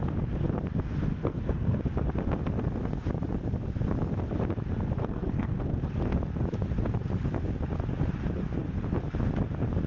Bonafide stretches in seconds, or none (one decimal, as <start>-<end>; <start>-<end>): 0.0-1.1; 1.8-5.0; 5.6-9.9